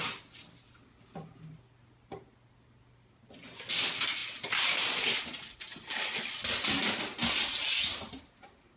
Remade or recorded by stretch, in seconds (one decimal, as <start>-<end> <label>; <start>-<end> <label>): 0.0-8.8 recorded